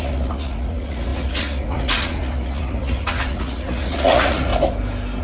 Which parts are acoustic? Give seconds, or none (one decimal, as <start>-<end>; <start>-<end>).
4.5-5.2